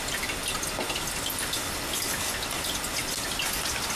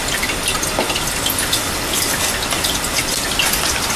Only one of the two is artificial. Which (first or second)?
second